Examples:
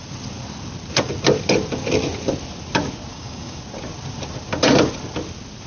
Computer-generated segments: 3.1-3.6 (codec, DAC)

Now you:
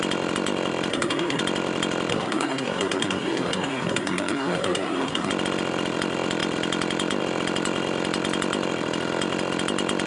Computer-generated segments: 0.9-1.4 (codec, SNAC); 2.1-5.3

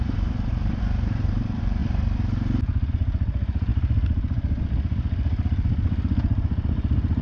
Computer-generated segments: 0.0-1.8 (vocoder, BigVGAN v2); 2.9-3.7

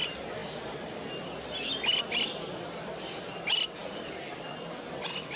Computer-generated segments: none